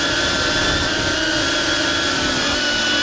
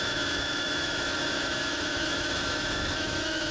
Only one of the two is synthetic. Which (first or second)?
second